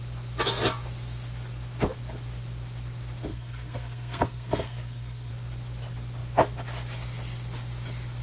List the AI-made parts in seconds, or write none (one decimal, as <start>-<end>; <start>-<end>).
3.3-5.3

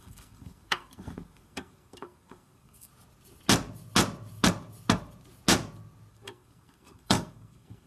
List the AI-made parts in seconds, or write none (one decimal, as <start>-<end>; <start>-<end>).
0.0-2.9; 6.1-7.9

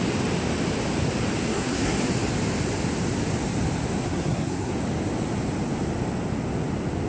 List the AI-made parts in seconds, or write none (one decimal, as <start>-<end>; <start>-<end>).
1.4-2.1; 4.0-4.7

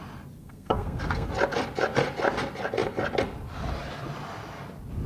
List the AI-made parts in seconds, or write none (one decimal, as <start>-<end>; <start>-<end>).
0.4-1.3

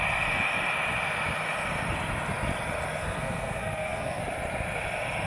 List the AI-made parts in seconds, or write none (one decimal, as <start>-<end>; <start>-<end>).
3.0-4.2